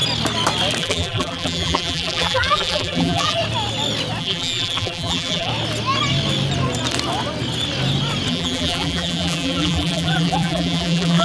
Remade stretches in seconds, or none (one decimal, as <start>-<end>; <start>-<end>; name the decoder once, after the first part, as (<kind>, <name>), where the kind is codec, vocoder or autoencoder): 0.8-3.4 (vocoder, BigVGAN v2); 4.2-5.5; 8.3-11.2